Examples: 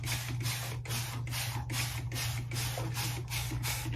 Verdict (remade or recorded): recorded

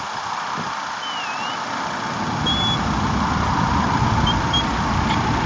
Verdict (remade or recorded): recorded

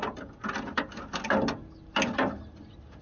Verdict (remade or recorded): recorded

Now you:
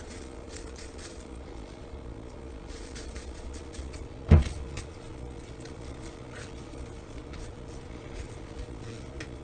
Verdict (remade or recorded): remade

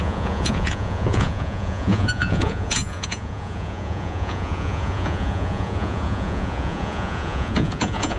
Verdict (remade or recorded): remade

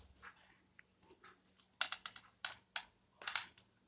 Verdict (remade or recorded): recorded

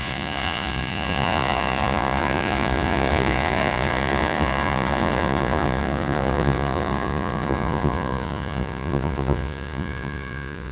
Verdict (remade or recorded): remade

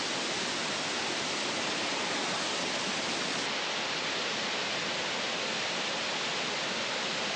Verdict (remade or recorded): recorded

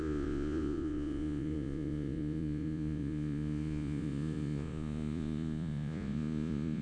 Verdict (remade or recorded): remade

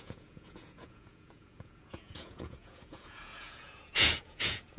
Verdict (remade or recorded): remade